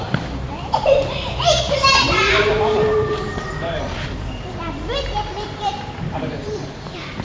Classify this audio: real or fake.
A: fake